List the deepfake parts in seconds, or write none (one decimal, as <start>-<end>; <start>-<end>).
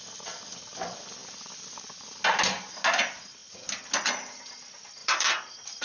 5.0-5.8